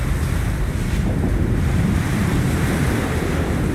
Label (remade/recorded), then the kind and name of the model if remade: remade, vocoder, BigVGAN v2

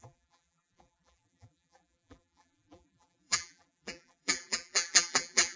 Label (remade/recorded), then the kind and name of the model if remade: remade, vocoder, BigVGAN v2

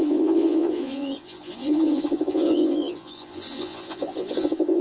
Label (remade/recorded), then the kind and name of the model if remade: remade, vocoder, Vocos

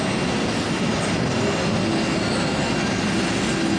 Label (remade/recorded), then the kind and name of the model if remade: recorded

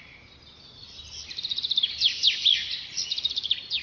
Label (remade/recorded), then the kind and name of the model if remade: recorded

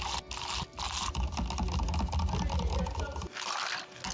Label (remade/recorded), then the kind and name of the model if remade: recorded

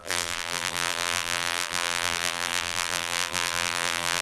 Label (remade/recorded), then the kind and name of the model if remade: remade, vocoder, BigVGAN v2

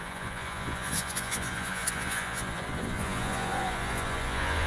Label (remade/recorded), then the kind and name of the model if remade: remade, vocoder, Vocos